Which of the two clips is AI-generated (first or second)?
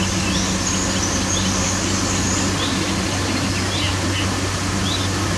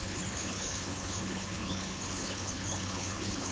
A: second